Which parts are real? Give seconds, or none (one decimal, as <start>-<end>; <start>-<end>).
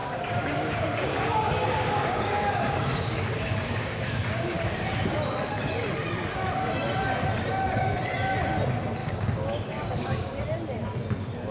5.0-9.0; 10.3-11.5